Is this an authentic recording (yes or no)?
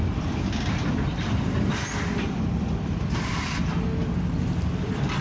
no